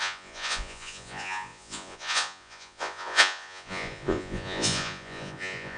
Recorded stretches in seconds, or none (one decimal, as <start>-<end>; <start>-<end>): none